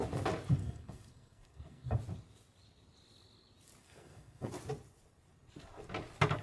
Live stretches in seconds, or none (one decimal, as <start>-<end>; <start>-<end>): 0.0-0.6; 2.0-3.8; 4.5-6.4